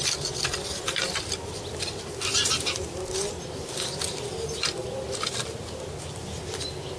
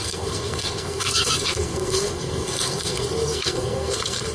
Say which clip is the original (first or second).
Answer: first